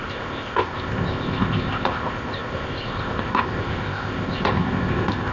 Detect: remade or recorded remade